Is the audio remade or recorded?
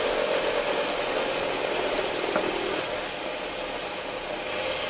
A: recorded